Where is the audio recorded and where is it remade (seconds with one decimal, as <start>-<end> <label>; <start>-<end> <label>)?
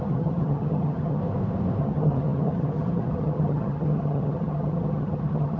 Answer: 0.0-1.2 remade; 1.2-1.8 recorded; 1.8-5.6 remade